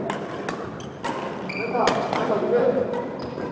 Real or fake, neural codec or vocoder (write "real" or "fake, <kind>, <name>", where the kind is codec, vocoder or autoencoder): real